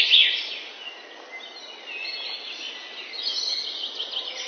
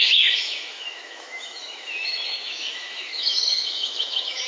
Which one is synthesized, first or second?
second